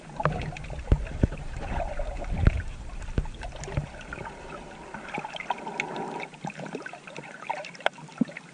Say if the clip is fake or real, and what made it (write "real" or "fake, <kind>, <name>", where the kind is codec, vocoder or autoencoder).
real